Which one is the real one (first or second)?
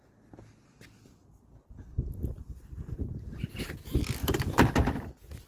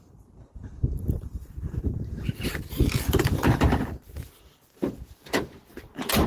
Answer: first